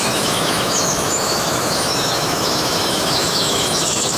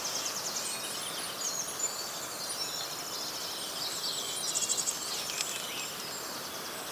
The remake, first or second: first